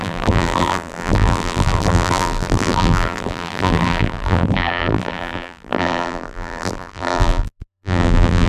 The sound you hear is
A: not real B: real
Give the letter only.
A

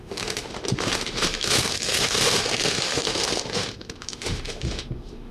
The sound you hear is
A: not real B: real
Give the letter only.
A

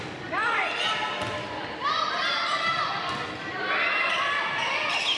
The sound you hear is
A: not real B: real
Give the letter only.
B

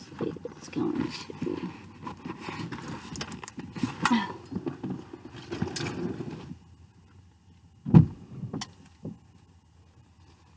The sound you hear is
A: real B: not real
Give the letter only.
A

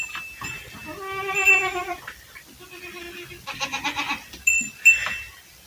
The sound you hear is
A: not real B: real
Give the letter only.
B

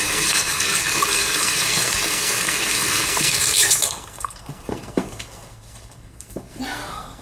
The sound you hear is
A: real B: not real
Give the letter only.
B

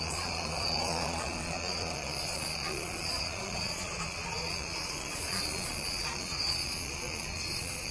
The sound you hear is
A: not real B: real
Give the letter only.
A